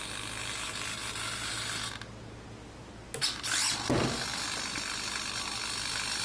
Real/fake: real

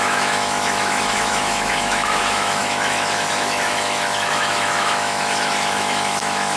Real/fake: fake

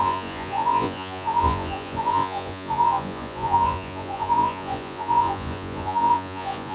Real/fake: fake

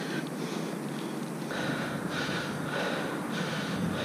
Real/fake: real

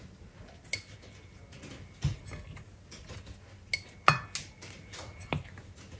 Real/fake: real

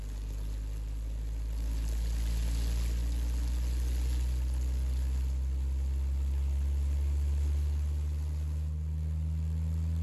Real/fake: real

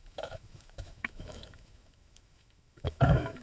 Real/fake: fake